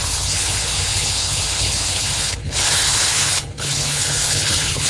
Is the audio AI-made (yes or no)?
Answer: yes